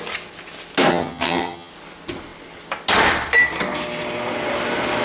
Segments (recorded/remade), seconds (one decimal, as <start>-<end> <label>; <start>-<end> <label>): 0.0-0.9 recorded; 0.9-1.7 remade; 1.7-5.0 recorded